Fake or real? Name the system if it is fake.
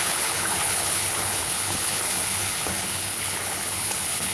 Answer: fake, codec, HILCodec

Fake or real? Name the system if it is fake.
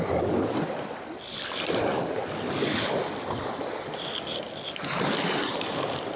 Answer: real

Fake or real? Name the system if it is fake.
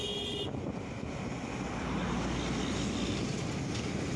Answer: real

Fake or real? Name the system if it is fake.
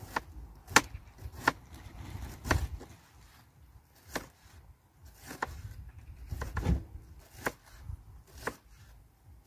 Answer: real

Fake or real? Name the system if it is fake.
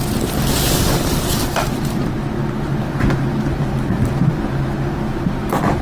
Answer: real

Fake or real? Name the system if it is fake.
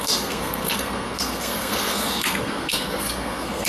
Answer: fake, codec, SNAC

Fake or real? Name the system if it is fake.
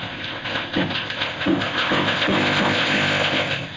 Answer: fake, codec, ZipCodec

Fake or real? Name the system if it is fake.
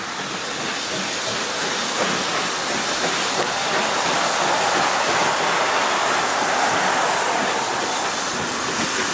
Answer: real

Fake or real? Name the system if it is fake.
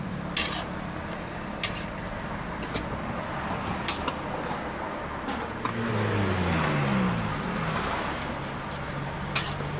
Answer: real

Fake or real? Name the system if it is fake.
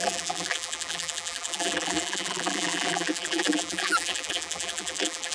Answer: fake, vocoder, BigVGAN v2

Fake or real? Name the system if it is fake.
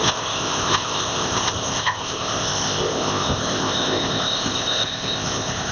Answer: fake, codec, ZipCodec